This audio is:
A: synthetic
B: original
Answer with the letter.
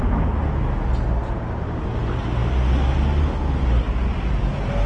B